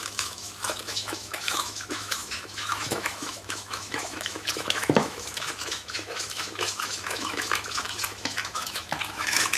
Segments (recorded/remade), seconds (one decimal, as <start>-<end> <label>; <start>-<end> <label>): 0.0-9.6 remade